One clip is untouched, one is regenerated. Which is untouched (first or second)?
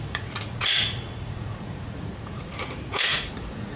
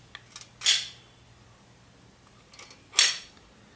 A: second